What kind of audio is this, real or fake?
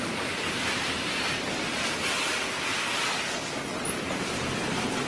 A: real